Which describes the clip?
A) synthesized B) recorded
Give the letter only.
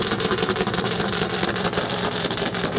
A